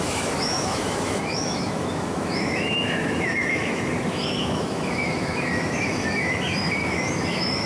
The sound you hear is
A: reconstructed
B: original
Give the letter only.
A